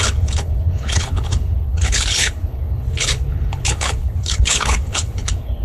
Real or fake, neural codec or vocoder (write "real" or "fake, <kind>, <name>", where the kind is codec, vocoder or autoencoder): fake, codec, HILCodec